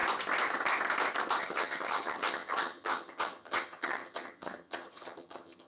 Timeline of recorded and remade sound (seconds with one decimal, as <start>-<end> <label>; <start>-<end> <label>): 0.0-1.4 recorded; 1.4-5.7 remade